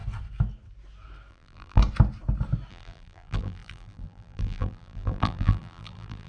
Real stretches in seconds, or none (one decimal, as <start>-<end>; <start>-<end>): 0.0-1.3; 1.8-2.7